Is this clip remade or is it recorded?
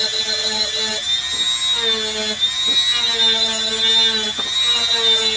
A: recorded